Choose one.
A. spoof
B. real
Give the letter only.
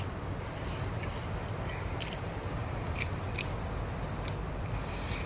B